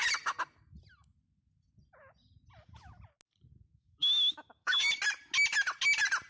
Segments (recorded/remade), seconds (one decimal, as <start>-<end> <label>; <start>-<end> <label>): 0.0-3.7 recorded; 3.7-4.9 remade; 4.9-6.3 recorded